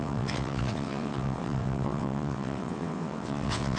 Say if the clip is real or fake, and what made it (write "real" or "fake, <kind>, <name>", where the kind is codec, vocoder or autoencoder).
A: fake, vocoder, WaveNeXt